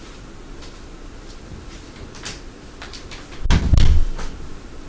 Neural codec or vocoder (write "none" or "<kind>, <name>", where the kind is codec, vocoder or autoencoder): none